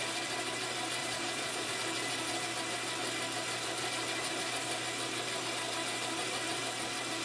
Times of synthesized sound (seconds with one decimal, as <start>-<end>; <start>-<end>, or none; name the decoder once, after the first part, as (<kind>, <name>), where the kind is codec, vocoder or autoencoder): 1.0-1.7 (vocoder, Vocos)

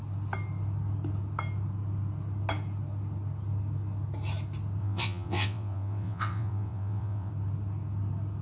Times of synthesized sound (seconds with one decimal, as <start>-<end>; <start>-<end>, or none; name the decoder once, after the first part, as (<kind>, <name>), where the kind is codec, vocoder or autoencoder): 4.8-7.3 (vocoder, WaveNeXt)

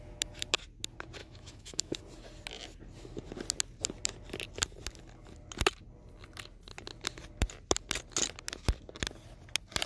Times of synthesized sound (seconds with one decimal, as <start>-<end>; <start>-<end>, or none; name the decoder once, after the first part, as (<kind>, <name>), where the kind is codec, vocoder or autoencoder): 1.2-2.0 (autoencoder, DAC-VAE)

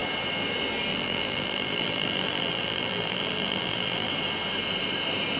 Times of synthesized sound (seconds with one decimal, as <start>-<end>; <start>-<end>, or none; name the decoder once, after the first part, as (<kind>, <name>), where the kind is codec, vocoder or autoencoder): 0.9-4.1 (vocoder, BigVGAN v2)

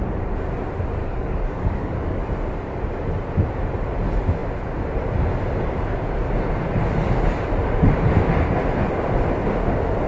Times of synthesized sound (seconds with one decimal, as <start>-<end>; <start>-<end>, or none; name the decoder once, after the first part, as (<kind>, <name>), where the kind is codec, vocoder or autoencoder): 1.0-2.2 (codec, DAC)

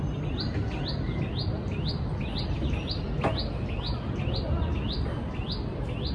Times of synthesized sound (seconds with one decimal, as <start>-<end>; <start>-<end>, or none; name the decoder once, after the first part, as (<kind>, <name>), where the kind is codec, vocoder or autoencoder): none

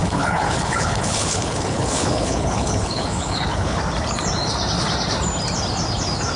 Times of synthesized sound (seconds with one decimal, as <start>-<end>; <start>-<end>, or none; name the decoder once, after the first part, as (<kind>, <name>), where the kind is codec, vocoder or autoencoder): 0.0-3.8 (codec, HILCodec)